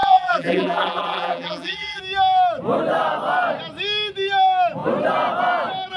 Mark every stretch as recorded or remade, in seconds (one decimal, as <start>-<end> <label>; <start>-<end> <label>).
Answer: 0.0-2.0 remade; 2.0-6.0 recorded